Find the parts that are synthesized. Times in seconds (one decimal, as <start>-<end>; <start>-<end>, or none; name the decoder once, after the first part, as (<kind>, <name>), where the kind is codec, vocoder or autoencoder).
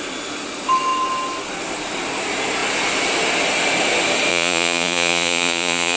4.3-6.0 (vocoder, Vocos)